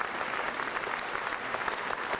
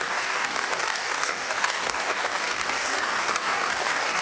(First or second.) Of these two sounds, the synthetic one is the second